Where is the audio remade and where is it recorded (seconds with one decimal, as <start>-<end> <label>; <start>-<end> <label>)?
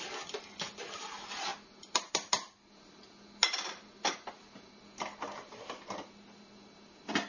0.0-7.3 recorded